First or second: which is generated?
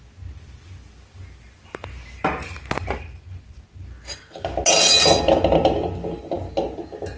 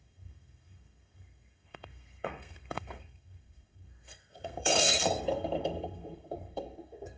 second